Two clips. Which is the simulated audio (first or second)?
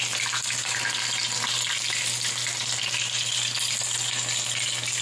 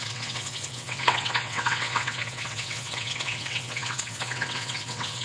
second